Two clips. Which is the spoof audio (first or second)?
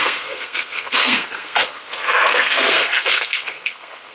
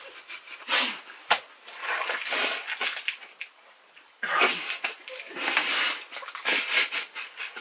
first